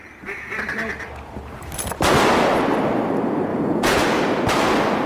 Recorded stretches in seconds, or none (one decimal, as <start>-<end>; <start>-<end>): 0.0-3.5; 4.0-5.1